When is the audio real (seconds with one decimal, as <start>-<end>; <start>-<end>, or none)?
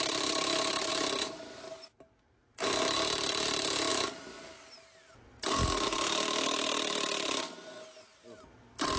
0.0-9.0